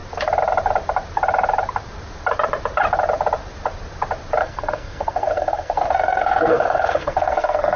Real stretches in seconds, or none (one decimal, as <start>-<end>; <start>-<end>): 0.0-4.4